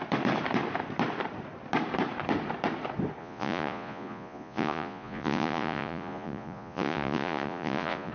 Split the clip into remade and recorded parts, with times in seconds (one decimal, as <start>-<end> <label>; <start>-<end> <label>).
0.0-3.2 recorded; 3.2-8.1 remade